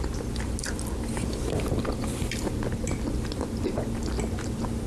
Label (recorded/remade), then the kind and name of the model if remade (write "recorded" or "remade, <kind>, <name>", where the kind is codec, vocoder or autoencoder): recorded